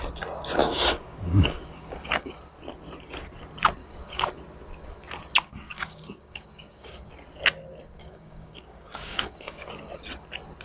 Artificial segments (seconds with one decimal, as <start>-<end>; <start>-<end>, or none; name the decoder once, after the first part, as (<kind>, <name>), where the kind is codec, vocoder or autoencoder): 0.6-2.3 (codec, DAC); 3.8-4.4; 5.4-7.1; 8.0-9.9